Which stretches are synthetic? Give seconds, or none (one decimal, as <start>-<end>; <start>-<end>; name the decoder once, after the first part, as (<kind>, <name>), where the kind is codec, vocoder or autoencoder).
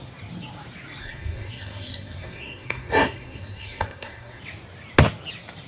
1.0-4.4 (codec, SNAC)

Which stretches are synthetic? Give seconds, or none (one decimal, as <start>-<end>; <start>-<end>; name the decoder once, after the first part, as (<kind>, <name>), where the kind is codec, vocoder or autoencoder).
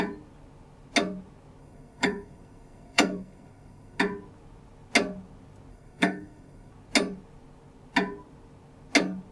1.6-4.0 (codec, SNAC); 5.7-6.7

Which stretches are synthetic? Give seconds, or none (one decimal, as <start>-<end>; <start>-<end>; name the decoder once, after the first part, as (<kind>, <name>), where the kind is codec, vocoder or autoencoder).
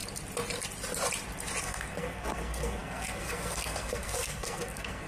1.6-5.1 (codec, SNAC)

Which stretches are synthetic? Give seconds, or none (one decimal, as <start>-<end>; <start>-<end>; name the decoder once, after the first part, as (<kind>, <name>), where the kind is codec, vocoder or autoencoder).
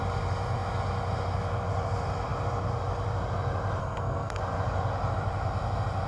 3.8-4.4 (codec, SNAC)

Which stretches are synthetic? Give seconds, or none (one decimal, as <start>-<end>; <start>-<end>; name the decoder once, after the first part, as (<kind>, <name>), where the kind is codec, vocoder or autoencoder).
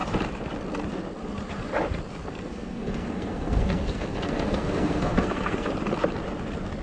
2.3-5.7 (codec, SNAC)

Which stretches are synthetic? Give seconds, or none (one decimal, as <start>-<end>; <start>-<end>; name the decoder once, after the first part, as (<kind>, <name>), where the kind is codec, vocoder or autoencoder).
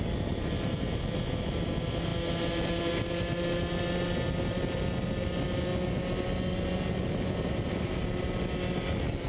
none